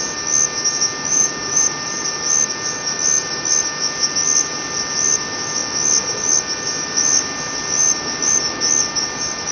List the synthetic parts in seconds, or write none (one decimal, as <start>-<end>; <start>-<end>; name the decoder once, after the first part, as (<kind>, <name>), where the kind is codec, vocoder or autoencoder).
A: 1.1-2.3 (vocoder, BigVGAN v2)

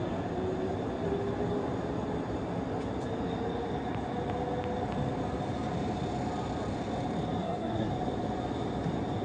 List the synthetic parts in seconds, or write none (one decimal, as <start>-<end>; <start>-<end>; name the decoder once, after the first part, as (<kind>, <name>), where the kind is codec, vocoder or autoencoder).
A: 7.4-7.9 (codec, SNAC)